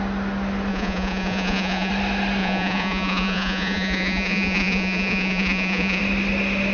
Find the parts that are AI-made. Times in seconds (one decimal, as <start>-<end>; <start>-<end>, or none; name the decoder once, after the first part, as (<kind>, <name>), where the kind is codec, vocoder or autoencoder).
0.7-1.9 (vocoder, Vocos); 2.4-6.0